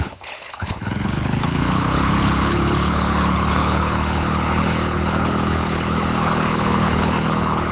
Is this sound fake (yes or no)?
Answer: yes